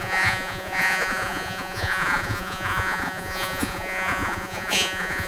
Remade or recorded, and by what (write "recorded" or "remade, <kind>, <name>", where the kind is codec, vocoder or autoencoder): remade, vocoder, Vocos